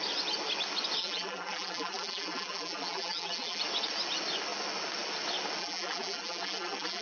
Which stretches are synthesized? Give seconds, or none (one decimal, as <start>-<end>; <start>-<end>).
1.0-3.6; 5.6-7.0